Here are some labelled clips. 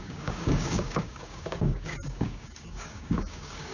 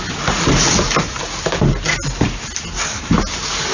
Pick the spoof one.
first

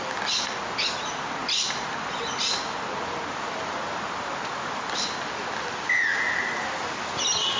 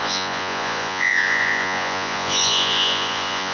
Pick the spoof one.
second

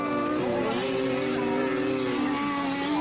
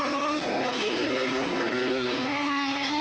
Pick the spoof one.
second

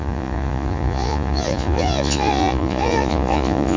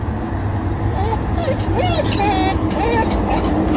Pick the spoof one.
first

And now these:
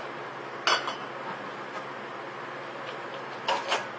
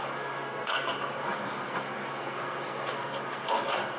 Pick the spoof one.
second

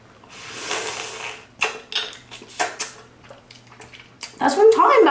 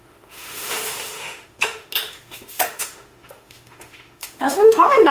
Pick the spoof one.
second